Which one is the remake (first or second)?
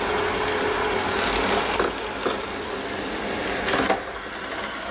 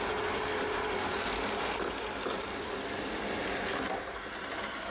second